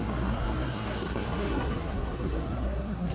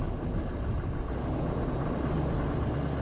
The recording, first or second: second